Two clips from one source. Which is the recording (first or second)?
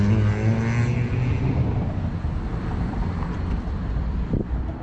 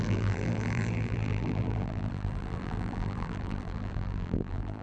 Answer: first